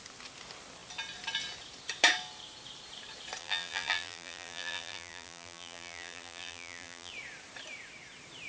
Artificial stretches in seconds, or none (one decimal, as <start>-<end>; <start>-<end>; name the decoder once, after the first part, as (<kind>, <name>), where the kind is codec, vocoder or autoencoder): 3.4-7.1 (vocoder, BigVGAN v2)